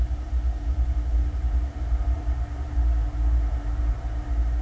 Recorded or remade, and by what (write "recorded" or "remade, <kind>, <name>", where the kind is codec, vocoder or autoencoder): remade, vocoder, BigVGAN v2